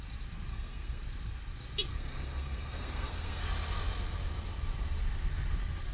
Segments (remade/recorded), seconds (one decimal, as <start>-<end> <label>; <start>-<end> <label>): 0.0-0.5 recorded; 0.5-1.0 remade; 1.0-1.9 recorded; 1.9-3.4 remade; 3.4-5.9 recorded